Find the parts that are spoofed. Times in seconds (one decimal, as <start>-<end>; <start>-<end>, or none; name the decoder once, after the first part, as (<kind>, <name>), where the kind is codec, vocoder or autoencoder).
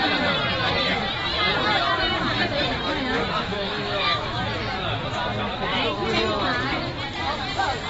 3.5-4.4 (autoencoder, DAC-VAE)